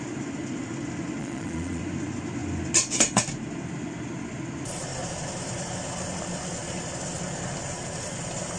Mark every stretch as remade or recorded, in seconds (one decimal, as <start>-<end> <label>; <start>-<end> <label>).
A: 0.0-1.2 recorded; 1.2-1.8 remade; 1.8-8.6 recorded